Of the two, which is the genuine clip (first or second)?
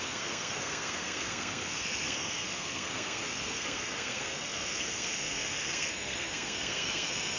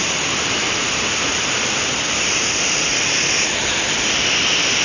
second